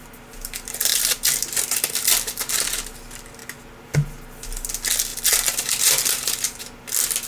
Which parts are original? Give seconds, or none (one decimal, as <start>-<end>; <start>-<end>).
0.0-7.3